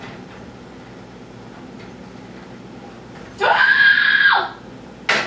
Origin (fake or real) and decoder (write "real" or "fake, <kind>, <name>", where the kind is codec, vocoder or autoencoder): real